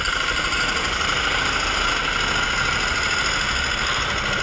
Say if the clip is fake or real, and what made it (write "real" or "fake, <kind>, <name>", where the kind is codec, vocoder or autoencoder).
real